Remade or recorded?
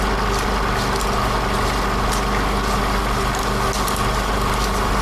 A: recorded